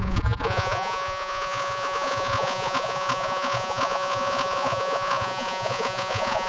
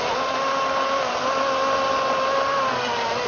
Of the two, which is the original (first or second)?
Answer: second